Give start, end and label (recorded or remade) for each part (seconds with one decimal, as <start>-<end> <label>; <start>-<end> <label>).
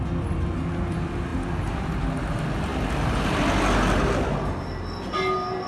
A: 0.0-5.7 recorded